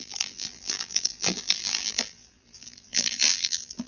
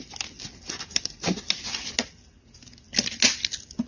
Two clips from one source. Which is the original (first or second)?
second